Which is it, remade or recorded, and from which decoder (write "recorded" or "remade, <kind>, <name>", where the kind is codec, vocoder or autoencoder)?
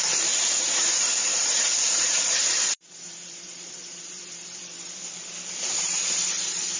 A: remade, vocoder, BigVGAN v2